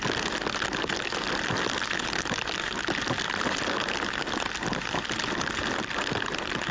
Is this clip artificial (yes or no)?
yes